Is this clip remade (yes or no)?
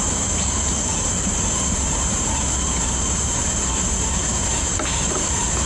yes